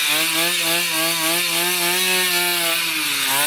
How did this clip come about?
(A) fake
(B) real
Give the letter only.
B